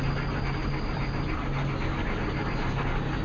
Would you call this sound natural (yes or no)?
yes